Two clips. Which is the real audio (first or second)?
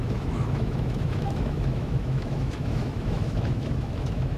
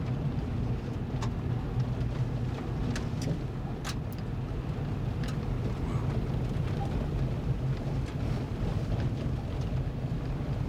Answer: second